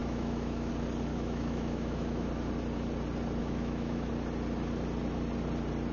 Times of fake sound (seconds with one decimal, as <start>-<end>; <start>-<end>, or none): 0.0-0.7; 1.1-2.3; 3.4-4.1